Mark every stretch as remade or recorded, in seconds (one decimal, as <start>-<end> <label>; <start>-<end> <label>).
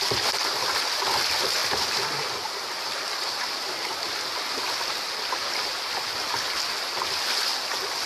0.0-6.1 remade; 6.1-8.1 recorded